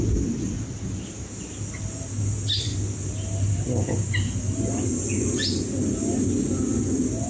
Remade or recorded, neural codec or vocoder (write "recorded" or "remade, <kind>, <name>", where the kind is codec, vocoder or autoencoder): recorded